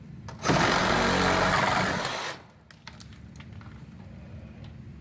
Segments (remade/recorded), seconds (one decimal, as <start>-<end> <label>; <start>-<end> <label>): 0.0-5.0 recorded